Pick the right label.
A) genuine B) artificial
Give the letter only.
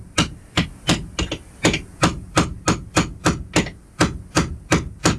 A